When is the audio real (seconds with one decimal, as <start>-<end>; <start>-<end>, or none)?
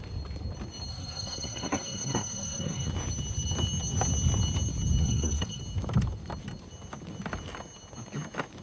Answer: 0.0-0.9; 2.9-5.0; 5.6-8.6